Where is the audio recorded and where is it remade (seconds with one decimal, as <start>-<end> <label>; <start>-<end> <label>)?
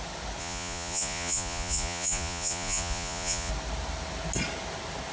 0.0-0.4 recorded; 0.4-3.5 remade; 3.5-5.1 recorded